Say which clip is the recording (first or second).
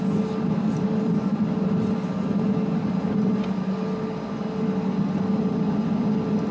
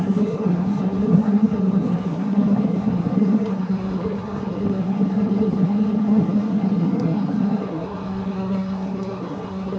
first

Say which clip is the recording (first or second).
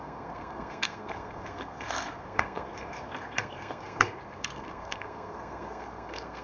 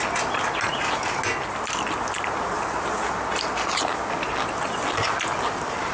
second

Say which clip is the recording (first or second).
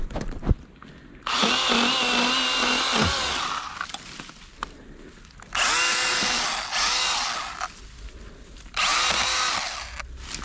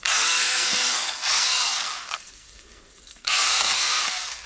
first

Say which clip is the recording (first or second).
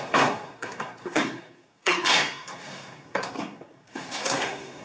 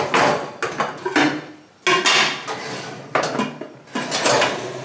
second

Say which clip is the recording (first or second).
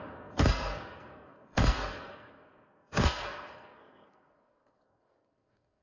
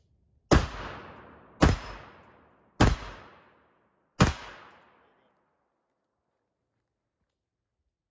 second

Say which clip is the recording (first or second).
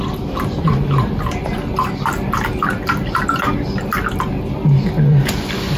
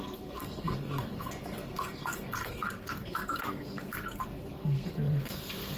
first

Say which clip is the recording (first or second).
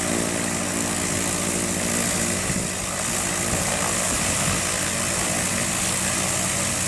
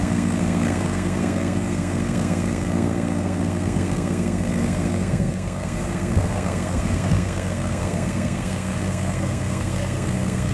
first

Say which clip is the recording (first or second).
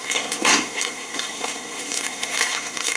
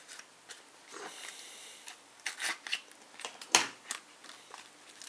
second